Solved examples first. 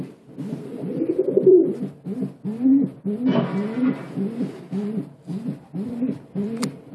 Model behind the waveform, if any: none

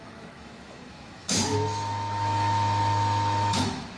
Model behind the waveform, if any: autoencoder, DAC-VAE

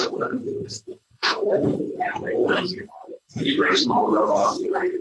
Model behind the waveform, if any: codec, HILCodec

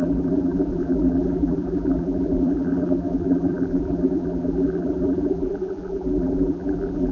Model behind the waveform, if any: vocoder, BigVGAN v2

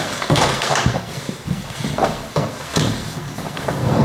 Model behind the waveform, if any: codec, SNAC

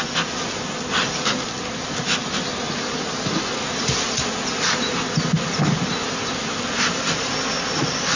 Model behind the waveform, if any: none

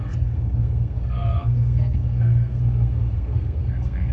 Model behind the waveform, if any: codec, SNAC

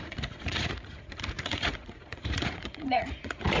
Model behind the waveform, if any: vocoder, Vocos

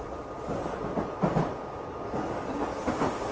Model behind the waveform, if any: none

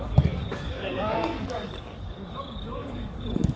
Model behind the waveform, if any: codec, DAC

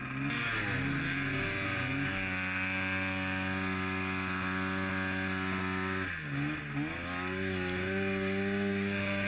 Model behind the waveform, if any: none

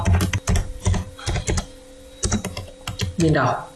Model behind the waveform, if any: none